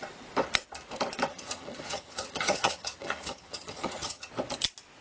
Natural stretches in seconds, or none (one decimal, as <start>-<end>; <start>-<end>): 0.0-1.3; 4.3-5.0

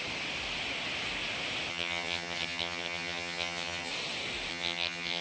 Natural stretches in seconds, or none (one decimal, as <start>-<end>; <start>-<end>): 0.0-1.7; 3.9-4.5

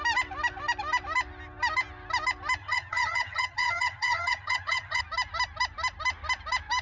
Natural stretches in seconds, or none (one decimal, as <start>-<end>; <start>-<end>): 0.0-2.6; 5.0-6.8

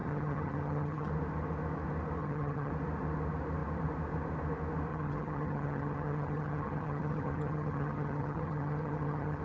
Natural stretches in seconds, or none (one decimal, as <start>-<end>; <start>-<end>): 1.1-2.2; 2.7-4.9

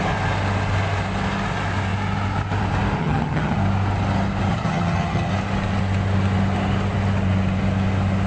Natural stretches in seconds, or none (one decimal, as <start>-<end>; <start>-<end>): 0.0-3.0; 3.6-4.5; 5.3-8.3